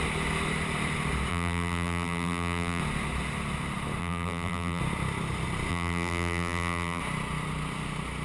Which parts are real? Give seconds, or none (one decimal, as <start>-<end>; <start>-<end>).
0.0-1.3; 2.8-4.0; 4.8-5.7; 7.0-8.2